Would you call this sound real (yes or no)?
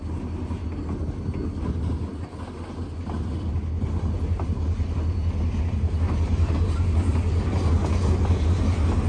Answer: yes